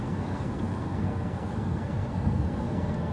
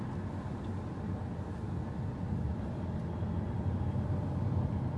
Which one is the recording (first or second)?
second